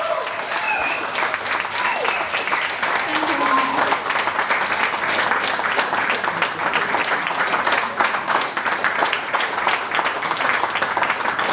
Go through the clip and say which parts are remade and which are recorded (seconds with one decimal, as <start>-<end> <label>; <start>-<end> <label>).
0.0-7.0 recorded; 7.0-8.5 remade; 8.5-9.0 recorded; 9.0-9.7 remade; 9.7-11.5 recorded